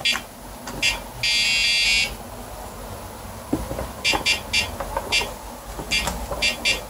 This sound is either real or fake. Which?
real